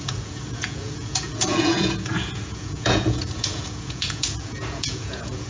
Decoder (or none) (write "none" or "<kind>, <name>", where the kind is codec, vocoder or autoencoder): vocoder, Vocos